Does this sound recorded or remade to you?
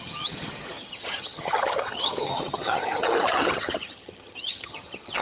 remade